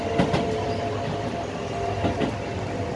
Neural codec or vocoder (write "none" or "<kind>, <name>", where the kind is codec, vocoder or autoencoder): none